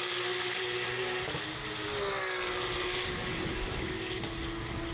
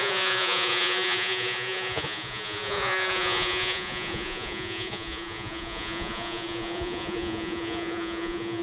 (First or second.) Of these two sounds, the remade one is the second